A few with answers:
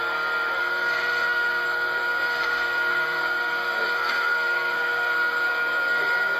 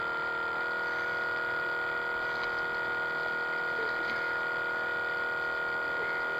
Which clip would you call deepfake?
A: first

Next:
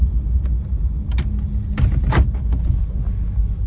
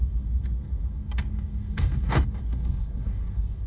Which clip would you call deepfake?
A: second